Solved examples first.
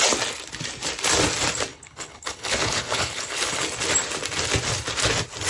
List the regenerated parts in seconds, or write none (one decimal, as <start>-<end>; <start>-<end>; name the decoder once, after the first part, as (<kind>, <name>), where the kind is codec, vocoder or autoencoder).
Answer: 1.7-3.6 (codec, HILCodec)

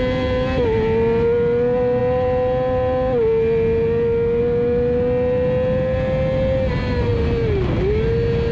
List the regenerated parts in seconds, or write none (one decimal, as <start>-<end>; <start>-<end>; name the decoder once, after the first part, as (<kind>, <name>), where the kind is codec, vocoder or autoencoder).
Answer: none

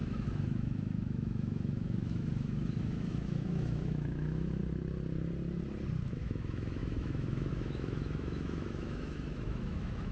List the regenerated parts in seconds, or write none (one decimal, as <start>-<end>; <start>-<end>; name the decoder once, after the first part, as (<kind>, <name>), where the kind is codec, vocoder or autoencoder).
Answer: 0.0-4.6 (autoencoder, DAC-VAE); 6.0-10.1

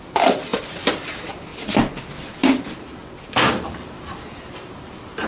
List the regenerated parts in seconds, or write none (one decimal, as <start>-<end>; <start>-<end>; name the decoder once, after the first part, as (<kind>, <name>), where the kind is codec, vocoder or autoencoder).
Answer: none